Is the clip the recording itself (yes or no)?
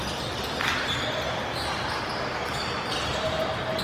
yes